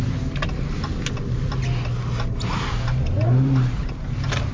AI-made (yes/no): no